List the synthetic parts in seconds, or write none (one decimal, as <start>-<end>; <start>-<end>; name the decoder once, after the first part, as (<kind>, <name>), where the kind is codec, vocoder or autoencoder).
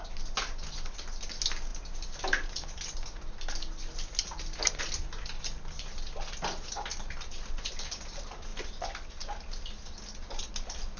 none